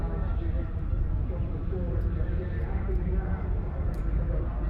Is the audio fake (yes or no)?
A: no